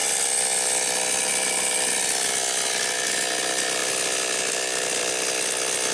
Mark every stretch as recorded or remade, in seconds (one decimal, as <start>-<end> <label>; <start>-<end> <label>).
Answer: 0.0-5.9 recorded